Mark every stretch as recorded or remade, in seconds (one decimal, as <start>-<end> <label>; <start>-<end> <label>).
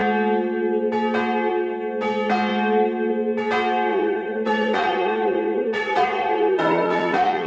0.0-3.9 recorded; 3.9-7.5 remade